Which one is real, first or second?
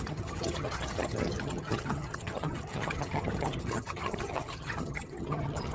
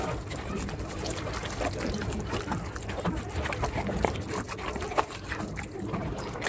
second